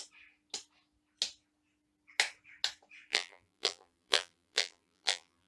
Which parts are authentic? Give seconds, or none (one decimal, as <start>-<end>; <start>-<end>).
0.0-3.1

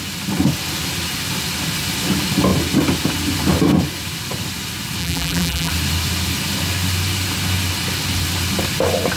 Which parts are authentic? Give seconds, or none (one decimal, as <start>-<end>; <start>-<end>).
0.0-5.0; 5.7-9.2

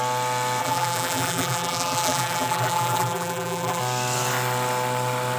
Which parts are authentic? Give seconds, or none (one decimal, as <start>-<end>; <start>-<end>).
0.0-0.6; 3.8-5.4

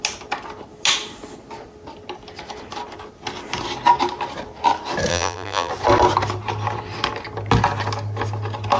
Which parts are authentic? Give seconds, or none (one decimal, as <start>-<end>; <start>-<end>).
0.0-5.1; 5.7-8.8

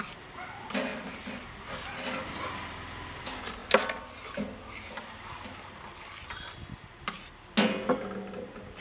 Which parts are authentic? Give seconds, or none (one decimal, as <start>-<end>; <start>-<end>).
0.0-8.8

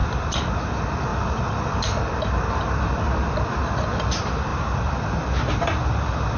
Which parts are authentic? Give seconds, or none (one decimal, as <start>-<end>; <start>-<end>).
0.5-1.1; 2.0-4.5

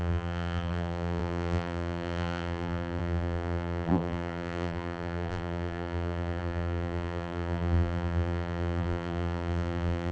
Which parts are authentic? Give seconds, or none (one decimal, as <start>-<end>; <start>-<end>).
none

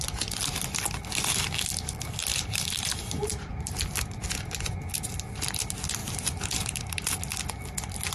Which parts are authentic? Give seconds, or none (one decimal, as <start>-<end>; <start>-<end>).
0.0-2.3; 3.8-6.0; 7.2-8.1